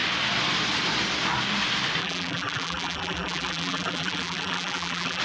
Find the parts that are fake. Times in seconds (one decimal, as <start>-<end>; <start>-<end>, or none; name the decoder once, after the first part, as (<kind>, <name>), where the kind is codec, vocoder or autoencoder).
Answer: 2.0-5.2 (vocoder, BigVGAN v2)

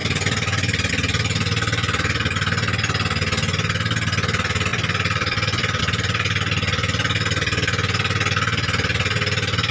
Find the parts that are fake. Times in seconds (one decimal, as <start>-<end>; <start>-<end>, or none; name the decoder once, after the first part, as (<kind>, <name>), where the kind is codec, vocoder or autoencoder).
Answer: 0.0-0.9 (vocoder, BigVGAN v2); 4.7-5.8

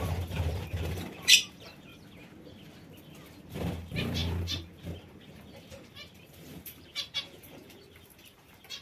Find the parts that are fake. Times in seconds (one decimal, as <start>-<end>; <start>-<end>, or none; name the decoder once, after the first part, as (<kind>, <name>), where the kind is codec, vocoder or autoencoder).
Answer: 0.0-1.9 (vocoder, BigVGAN v2); 3.4-8.8

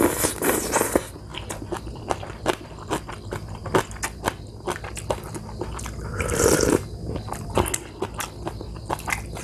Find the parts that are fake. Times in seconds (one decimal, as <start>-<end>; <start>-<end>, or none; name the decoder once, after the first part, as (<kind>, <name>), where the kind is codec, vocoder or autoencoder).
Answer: 6.1-7.3 (vocoder, BigVGAN v2)

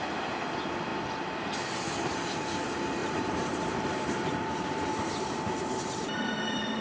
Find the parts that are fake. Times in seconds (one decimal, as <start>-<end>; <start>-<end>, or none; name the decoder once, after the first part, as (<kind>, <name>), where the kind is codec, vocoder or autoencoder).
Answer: 3.0-6.8 (vocoder, BigVGAN v2)

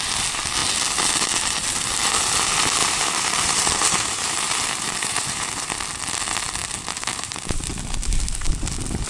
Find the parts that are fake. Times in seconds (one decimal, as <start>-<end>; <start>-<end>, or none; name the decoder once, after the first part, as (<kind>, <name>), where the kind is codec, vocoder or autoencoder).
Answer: 2.8-5.7 (vocoder, BigVGAN v2); 6.6-7.7